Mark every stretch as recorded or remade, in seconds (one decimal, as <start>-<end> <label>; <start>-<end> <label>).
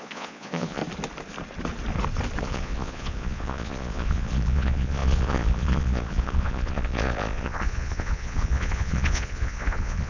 0.0-0.8 remade; 0.8-2.4 recorded; 2.4-10.1 remade